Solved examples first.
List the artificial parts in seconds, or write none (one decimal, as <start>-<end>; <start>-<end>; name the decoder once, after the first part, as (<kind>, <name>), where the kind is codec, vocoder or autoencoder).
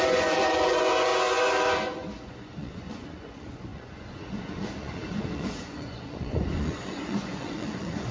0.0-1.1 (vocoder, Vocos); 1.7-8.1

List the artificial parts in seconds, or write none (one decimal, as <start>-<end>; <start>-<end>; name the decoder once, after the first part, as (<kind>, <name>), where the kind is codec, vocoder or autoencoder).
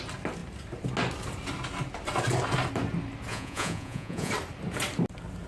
3.3-4.3 (vocoder, Vocos)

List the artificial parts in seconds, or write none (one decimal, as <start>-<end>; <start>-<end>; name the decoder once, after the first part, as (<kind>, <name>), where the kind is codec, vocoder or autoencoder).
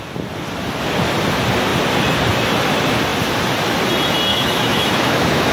4.3-5.5 (autoencoder, DAC-VAE)